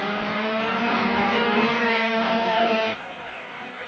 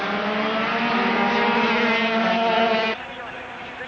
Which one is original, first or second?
second